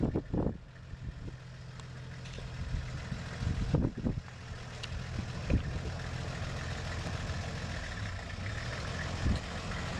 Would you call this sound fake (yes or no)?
no